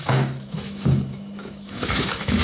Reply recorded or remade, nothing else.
remade